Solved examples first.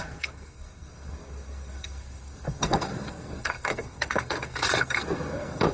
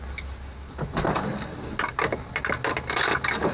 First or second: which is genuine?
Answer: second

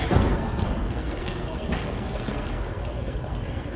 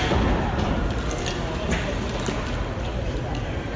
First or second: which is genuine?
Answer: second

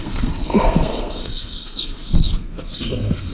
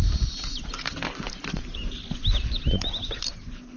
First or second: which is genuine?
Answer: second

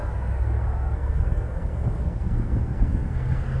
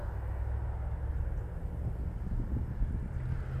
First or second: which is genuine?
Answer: second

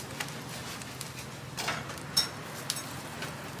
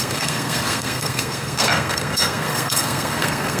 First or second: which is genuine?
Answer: first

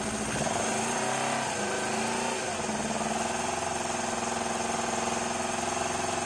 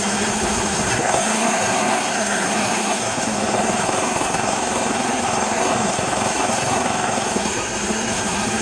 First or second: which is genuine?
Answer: first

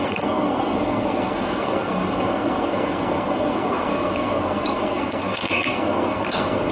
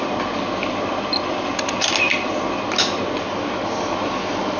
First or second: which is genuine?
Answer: second